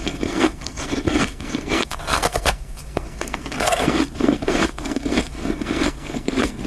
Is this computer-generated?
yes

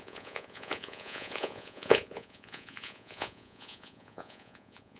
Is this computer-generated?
yes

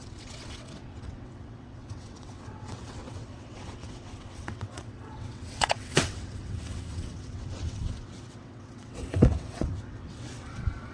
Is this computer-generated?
yes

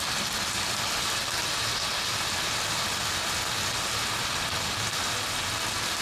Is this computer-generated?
no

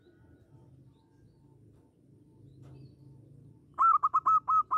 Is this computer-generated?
no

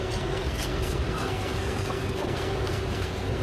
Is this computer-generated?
yes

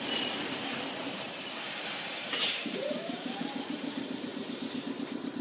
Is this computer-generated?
yes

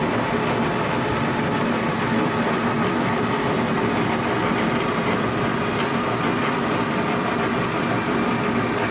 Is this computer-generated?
no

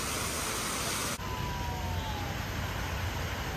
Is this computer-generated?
no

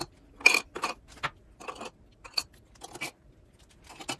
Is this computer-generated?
no